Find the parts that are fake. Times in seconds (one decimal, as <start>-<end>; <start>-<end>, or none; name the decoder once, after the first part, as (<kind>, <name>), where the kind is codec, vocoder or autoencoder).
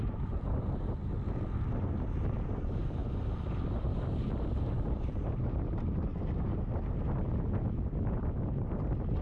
0.0-1.0 (vocoder, BigVGAN v2); 2.5-3.0; 3.7-6.1